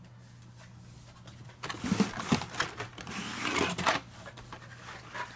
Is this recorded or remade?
recorded